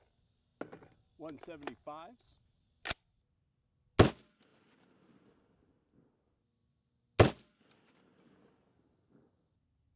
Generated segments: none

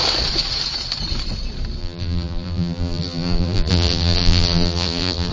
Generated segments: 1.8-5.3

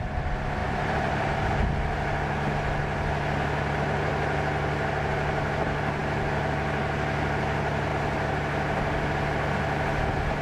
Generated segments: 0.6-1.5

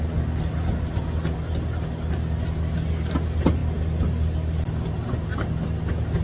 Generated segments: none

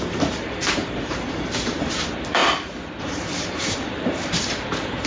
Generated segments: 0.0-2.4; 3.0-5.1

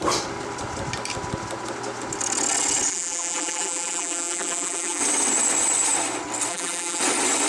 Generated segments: 2.9-5.0; 6.5-7.0

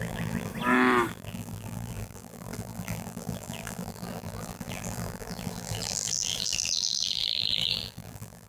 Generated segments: 0.0-0.5; 1.1-8.5

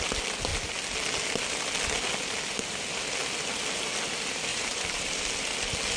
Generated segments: 4.5-5.2